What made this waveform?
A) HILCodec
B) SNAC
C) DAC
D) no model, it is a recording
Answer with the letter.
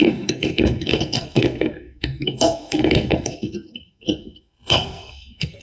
B